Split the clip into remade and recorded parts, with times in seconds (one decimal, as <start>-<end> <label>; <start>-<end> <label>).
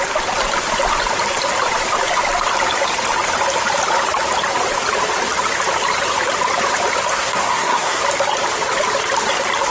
0.0-7.1 recorded; 7.1-8.0 remade; 8.0-9.7 recorded